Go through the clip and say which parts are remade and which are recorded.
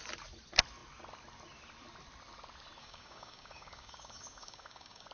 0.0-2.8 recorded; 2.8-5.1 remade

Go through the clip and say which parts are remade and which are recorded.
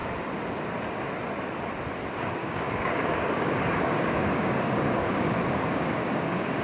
0.0-2.4 recorded; 2.4-6.6 remade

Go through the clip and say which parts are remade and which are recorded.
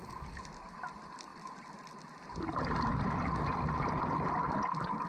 0.0-5.1 recorded